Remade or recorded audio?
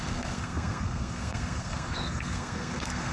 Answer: remade